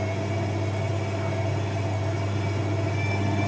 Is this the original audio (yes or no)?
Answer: yes